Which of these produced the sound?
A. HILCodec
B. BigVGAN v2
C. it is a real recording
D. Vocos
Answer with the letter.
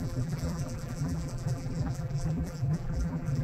B